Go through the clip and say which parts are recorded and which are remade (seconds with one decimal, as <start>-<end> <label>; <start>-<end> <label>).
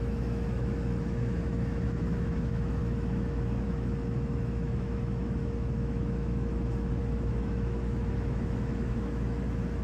0.0-9.8 remade